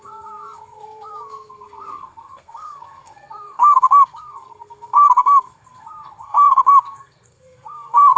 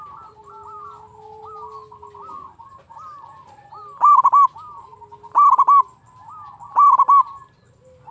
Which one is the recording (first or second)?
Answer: second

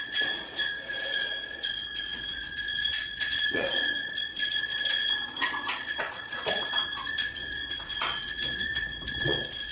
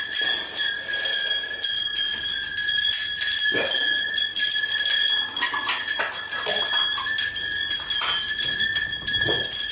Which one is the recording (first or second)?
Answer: second